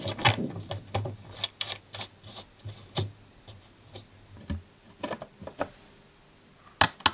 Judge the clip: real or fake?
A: real